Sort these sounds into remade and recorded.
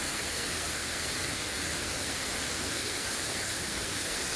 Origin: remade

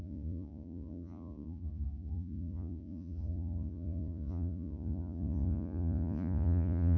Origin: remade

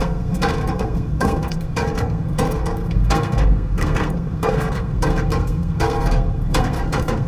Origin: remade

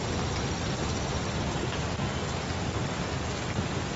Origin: recorded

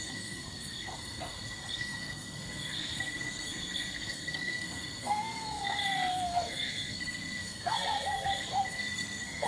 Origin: remade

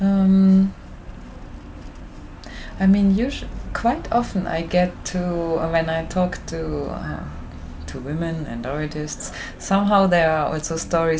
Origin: recorded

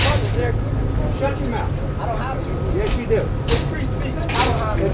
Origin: recorded